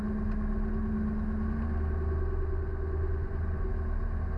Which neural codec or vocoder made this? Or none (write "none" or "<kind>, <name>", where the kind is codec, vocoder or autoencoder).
none